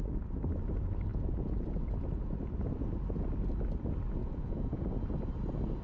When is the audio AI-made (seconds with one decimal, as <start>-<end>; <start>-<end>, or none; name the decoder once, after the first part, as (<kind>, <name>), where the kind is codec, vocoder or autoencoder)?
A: 1.1-1.9 (vocoder, Vocos); 4.2-4.8